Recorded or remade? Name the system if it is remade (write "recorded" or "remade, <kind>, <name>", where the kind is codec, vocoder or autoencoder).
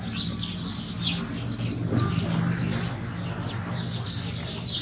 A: recorded